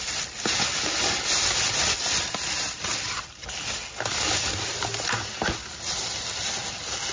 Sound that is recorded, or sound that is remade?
recorded